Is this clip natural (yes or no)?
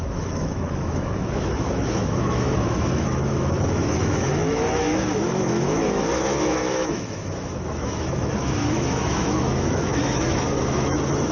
no